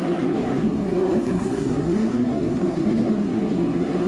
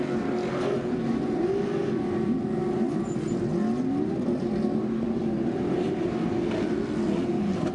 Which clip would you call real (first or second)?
second